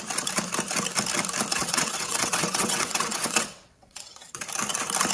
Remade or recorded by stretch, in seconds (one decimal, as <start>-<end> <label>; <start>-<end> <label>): 0.0-1.6 recorded; 1.6-4.4 remade; 4.4-5.1 recorded

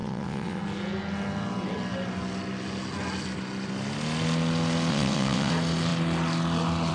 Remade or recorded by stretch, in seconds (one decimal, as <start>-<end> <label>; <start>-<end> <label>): 0.0-0.6 remade; 0.6-4.9 recorded; 4.9-5.5 remade; 5.5-6.9 recorded